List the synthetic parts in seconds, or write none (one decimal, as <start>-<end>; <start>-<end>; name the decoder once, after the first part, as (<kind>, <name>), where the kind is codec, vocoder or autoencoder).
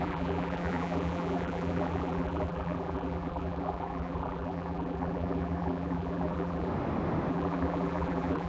0.0-6.7 (vocoder, BigVGAN v2); 7.3-8.5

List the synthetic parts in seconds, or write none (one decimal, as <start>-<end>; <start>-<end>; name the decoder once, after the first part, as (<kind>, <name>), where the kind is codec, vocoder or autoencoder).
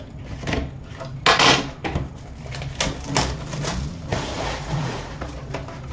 4.1-5.4 (vocoder, Vocos)